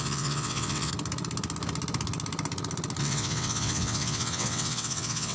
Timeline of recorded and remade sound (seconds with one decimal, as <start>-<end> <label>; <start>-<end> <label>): 0.0-0.9 remade; 0.9-3.0 recorded; 3.0-5.3 remade

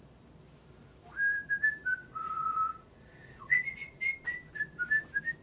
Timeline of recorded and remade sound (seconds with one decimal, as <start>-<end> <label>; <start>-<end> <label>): 0.0-2.0 recorded; 2.0-4.0 remade; 4.0-5.4 recorded

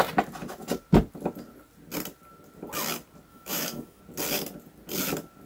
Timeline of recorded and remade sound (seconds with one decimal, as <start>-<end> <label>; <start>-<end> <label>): 0.0-3.3 recorded; 3.3-4.0 remade; 4.0-5.5 recorded

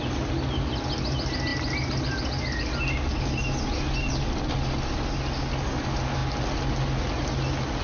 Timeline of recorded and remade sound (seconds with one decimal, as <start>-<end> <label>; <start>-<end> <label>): 0.0-7.8 recorded